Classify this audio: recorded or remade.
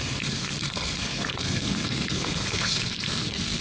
remade